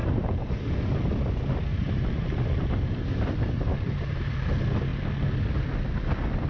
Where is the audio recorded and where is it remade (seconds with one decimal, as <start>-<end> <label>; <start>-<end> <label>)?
0.0-0.5 remade; 0.5-1.7 recorded; 1.7-4.5 remade; 4.5-6.5 recorded